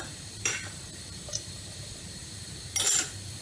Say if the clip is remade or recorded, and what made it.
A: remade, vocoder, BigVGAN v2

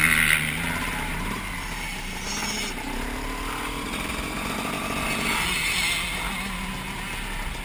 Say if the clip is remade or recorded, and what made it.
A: recorded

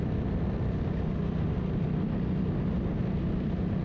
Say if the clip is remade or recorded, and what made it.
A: recorded